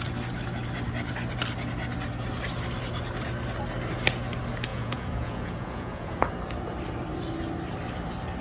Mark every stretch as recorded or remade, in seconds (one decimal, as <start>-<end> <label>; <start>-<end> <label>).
0.0-4.7 recorded; 4.7-6.3 remade; 6.3-8.4 recorded